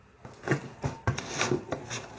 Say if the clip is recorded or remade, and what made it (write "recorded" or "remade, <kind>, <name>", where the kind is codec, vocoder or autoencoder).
recorded